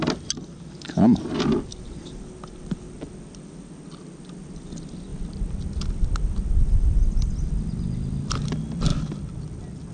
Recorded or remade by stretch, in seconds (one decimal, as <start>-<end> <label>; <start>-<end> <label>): 0.0-9.9 recorded